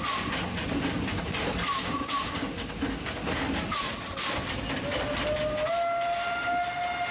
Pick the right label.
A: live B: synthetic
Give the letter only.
A